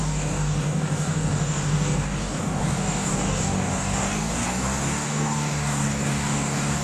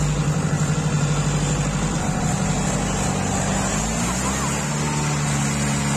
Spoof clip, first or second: first